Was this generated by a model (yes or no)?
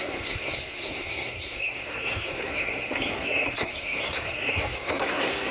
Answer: yes